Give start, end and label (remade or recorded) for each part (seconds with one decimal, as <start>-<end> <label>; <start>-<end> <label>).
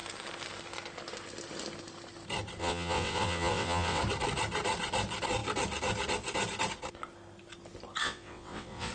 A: 0.0-2.6 recorded; 2.6-4.0 remade; 4.0-8.0 recorded; 8.0-8.9 remade